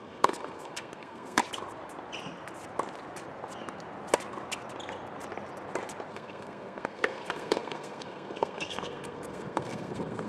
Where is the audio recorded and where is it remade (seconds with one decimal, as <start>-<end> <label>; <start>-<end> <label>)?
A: 0.0-1.4 remade; 1.4-6.1 recorded; 6.1-10.3 remade